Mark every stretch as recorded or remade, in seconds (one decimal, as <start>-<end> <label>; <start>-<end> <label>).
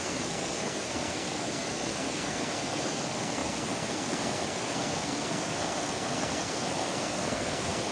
0.0-7.9 remade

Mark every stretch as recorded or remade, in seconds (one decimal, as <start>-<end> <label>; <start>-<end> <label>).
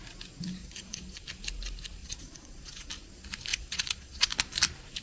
0.0-0.6 recorded; 0.6-1.2 remade; 1.2-2.0 recorded; 2.0-2.9 remade; 2.9-3.5 recorded; 3.5-4.3 remade; 4.3-5.0 recorded